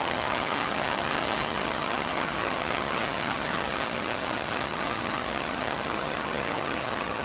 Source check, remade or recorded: remade